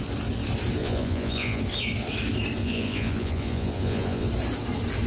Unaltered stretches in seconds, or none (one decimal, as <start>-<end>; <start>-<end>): 0.0-0.8; 1.6-2.6; 4.3-5.1